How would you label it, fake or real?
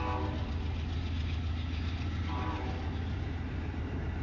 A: real